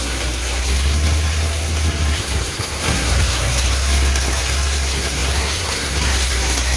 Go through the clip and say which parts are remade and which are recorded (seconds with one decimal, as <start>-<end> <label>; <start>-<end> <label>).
0.0-6.8 remade